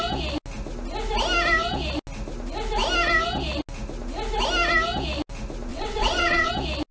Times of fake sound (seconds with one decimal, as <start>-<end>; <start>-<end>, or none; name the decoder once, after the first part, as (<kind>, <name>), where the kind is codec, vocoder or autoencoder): 5.7-6.5 (vocoder, WaveNeXt)